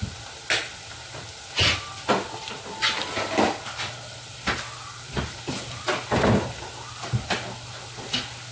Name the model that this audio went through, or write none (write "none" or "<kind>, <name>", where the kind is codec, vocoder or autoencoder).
none